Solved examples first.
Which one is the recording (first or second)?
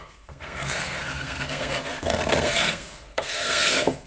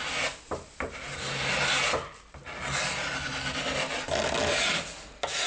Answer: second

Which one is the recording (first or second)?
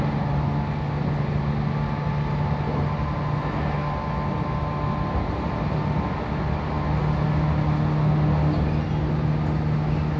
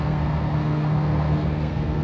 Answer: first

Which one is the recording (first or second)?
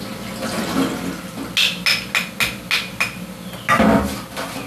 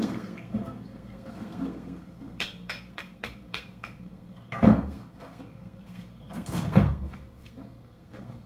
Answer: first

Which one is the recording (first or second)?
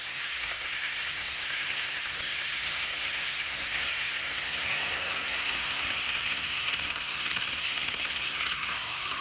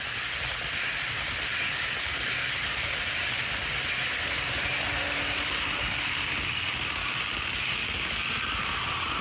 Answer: second